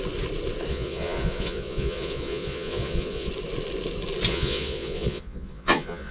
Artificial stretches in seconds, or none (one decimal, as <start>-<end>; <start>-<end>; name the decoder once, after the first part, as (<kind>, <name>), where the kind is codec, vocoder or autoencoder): 0.7-3.3 (vocoder, Vocos); 4.3-6.1